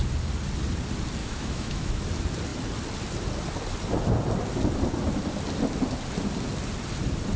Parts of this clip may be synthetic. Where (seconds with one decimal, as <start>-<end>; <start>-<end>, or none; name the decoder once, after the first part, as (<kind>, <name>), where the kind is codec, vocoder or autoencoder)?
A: 1.2-2.0 (autoencoder, DAC-VAE)